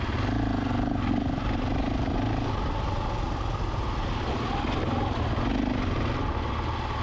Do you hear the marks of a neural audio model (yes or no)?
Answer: no